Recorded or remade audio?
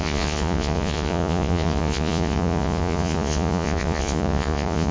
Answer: remade